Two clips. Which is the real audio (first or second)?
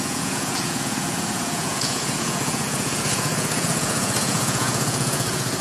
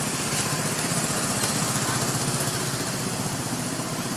second